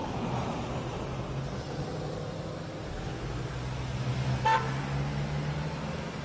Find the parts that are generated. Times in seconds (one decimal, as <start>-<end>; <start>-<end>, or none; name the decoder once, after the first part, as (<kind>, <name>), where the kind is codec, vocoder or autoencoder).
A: none